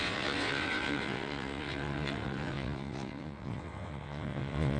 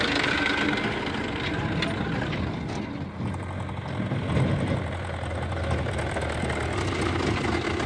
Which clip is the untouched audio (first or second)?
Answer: second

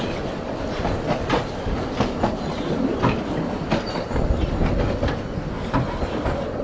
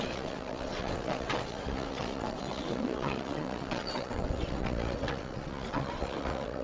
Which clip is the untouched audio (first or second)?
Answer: first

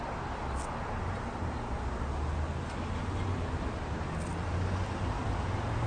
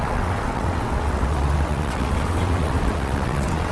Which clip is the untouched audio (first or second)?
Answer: first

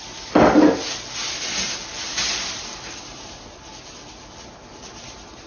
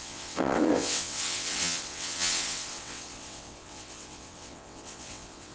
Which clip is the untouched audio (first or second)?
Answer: first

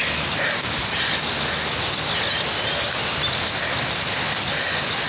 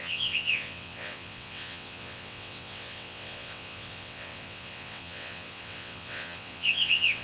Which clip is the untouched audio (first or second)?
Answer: first